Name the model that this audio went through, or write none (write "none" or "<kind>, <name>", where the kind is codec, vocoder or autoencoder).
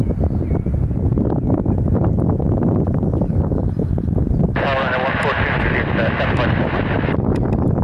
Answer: none